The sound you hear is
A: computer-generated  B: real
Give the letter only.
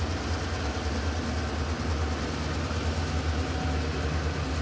B